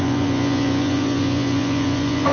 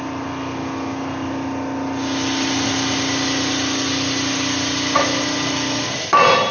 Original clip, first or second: second